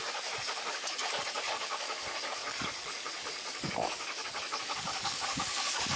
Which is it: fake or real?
fake